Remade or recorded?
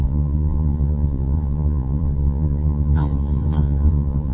remade